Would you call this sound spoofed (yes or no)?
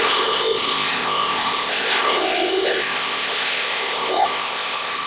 yes